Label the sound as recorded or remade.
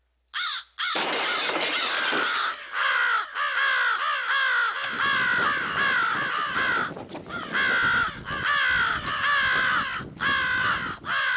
recorded